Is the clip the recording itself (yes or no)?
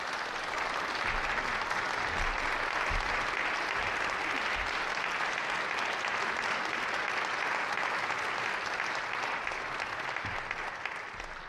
yes